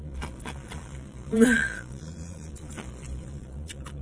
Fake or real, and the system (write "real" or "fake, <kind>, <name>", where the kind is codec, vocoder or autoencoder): fake, vocoder, Vocos